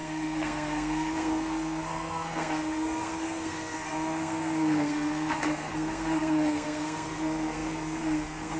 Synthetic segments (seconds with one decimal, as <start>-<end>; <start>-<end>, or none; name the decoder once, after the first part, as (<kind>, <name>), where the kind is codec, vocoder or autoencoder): 0.0-8.6 (codec, SNAC)

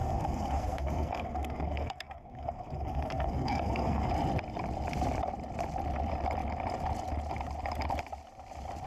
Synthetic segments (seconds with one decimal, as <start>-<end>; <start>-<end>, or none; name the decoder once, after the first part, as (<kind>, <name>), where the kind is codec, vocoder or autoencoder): 0.0-4.1 (codec, SNAC)

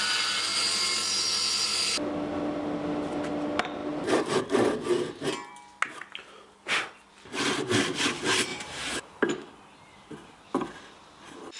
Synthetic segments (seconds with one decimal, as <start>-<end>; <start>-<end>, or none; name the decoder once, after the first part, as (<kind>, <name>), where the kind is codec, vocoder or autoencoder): 3.8-4.4 (vocoder, BigVGAN v2); 8.5-9.3

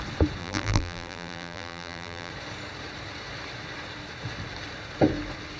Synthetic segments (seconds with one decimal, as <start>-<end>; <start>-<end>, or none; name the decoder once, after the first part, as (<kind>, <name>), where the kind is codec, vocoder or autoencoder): 0.4-2.3 (vocoder, BigVGAN v2)